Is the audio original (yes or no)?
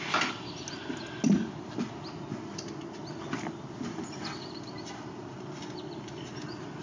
yes